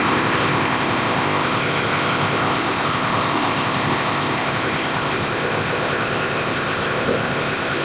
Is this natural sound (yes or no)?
no